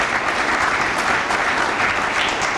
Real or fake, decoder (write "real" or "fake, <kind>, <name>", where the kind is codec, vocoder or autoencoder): real